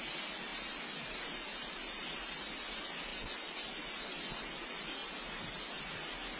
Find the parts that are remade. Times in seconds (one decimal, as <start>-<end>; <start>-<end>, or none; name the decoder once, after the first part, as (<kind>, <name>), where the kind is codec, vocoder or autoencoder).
none